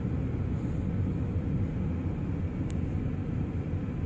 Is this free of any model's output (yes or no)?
yes